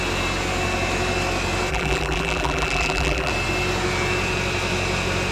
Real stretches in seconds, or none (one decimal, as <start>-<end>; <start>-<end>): 0.0-1.7; 3.3-5.3